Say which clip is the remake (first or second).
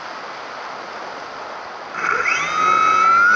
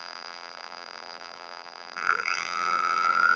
second